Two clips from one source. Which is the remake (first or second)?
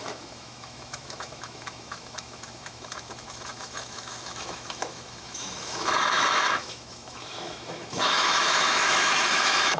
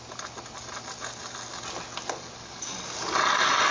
first